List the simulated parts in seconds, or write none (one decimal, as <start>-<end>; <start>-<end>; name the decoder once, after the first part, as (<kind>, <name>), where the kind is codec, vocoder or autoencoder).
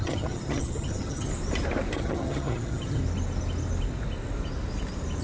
0.0-1.3 (vocoder, HiFi-GAN); 2.0-3.0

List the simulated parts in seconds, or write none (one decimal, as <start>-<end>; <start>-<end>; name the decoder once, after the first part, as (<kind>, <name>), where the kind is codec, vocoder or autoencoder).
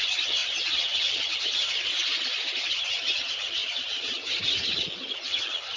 0.0-1.9 (vocoder, HiFi-GAN); 2.6-5.8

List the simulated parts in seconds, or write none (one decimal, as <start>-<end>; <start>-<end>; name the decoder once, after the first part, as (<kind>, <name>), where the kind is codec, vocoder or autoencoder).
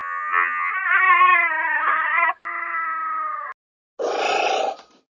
0.0-0.7 (vocoder, HiFi-GAN)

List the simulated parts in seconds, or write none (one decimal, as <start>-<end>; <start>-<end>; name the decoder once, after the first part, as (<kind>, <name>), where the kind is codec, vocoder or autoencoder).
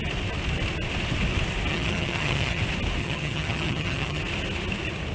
1.7-2.6 (vocoder, HiFi-GAN); 3.0-4.2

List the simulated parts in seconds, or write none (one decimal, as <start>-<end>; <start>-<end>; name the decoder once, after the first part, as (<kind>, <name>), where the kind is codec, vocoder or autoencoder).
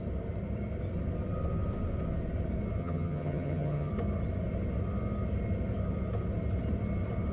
2.8-3.9 (vocoder, HiFi-GAN)